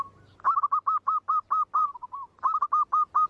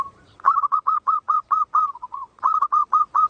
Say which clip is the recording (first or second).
first